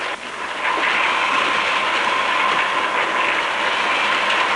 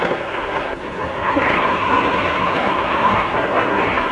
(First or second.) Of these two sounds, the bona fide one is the first